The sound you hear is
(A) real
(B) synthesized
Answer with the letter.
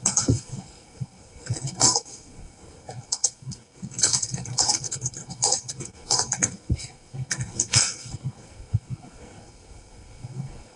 B